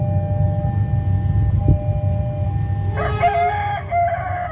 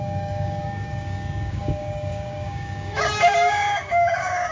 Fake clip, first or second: second